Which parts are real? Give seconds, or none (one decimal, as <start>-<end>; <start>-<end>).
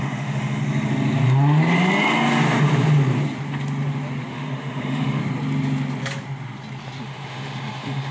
0.6-4.3; 5.2-7.0